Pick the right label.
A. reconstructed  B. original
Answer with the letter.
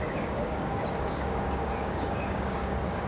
A